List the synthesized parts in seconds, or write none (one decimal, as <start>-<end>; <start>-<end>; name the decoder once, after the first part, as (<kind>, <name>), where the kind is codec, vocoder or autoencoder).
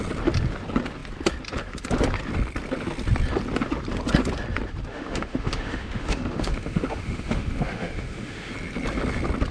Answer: 4.9-8.5 (autoencoder, DAC-VAE)